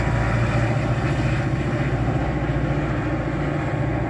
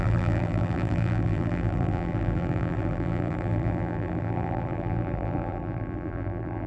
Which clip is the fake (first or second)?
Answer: second